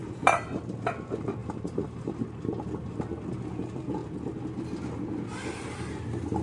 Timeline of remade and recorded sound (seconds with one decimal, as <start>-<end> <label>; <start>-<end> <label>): 0.0-0.6 remade; 0.6-1.4 recorded; 1.4-2.1 remade; 2.1-6.4 recorded